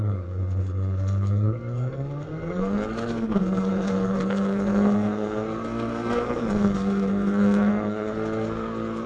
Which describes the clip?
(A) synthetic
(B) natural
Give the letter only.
A